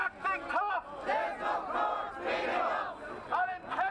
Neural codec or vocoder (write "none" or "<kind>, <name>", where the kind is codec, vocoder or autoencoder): none